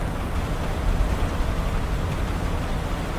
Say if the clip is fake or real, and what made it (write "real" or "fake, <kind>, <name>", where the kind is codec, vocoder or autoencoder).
real